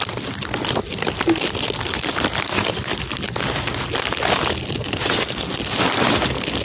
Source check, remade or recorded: remade